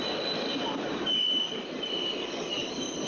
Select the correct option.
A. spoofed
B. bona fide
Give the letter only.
B